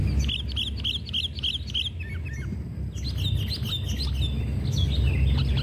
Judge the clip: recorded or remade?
recorded